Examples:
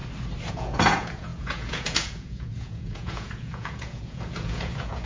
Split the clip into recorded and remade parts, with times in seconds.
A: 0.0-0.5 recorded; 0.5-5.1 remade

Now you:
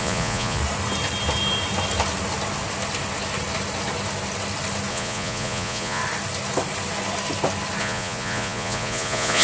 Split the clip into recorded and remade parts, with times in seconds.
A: 0.0-0.6 remade; 0.6-4.9 recorded; 4.9-6.0 remade; 6.0-7.8 recorded; 7.8-9.4 remade

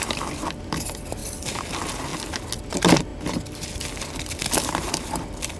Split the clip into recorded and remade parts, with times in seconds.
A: 0.0-1.2 remade; 1.2-1.7 recorded; 1.7-2.1 remade; 2.1-2.7 recorded; 2.7-3.1 remade; 3.1-4.9 recorded; 4.9-5.6 remade

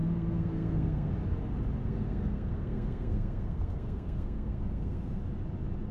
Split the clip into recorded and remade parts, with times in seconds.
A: 0.0-1.1 remade; 1.1-1.8 recorded; 1.8-5.2 remade; 5.2-5.9 recorded

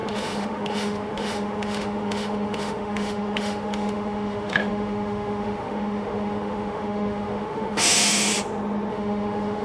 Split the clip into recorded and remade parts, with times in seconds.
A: 0.0-8.3 remade; 8.3-8.9 recorded; 8.9-9.6 remade

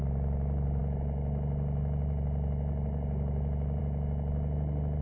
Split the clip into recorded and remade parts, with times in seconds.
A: 0.0-5.0 recorded

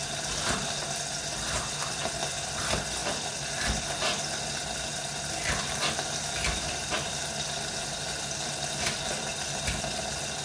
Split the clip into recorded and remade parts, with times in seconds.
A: 0.0-10.4 recorded

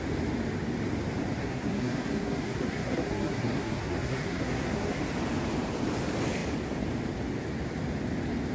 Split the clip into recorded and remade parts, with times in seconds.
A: 0.0-1.4 recorded; 1.4-5.0 remade; 5.0-8.5 recorded